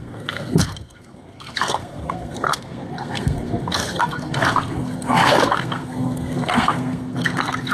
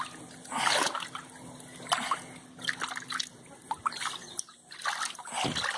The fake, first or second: first